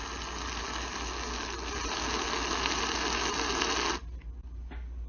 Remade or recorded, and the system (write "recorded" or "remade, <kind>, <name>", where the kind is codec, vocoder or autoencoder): recorded